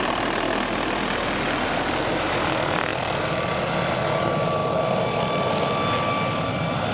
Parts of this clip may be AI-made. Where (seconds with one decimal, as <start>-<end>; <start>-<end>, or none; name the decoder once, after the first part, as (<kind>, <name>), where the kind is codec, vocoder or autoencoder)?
none